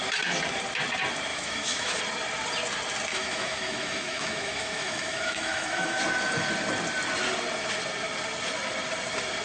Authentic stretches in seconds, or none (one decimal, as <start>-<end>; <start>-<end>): 0.0-1.3; 2.0-3.1; 6.0-9.4